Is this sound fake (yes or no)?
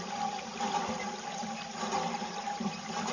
no